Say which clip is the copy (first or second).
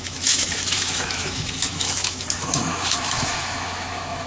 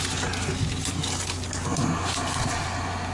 first